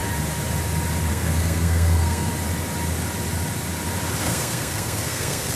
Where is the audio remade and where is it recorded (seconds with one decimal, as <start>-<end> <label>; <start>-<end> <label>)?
0.0-1.1 recorded; 1.1-2.3 remade; 2.3-4.2 recorded; 4.2-5.6 remade